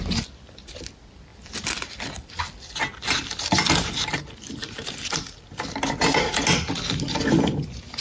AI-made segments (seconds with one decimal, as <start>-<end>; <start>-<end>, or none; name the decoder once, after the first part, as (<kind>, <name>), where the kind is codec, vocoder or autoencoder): 1.3-3.7 (vocoder, BigVGAN v2)